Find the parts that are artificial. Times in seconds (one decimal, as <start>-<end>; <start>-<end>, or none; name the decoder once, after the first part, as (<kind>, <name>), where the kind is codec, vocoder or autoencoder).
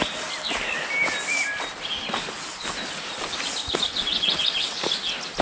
3.9-4.8 (vocoder, WaveNeXt)